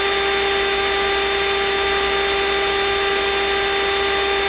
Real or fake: real